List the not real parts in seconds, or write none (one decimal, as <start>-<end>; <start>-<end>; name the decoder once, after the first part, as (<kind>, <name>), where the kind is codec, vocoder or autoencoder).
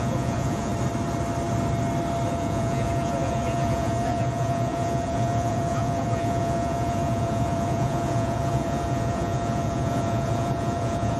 0.0-0.7 (vocoder, Vocos); 2.3-11.2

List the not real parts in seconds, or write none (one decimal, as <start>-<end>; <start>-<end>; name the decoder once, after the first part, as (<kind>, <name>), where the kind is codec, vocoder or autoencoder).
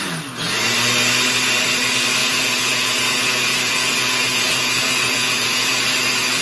2.2-5.8 (vocoder, Vocos)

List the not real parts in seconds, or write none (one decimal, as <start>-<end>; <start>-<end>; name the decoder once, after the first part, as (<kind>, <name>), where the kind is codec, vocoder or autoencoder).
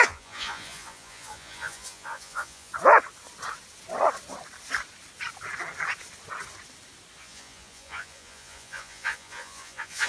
0.0-2.7 (vocoder, Vocos); 7.2-10.1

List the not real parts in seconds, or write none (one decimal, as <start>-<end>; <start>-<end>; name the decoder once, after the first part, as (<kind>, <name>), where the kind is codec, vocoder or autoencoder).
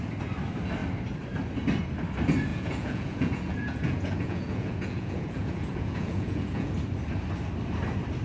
2.5-6.7 (vocoder, Vocos)